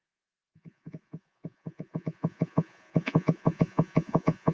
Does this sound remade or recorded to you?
remade